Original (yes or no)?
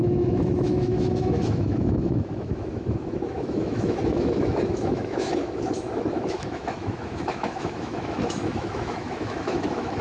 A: no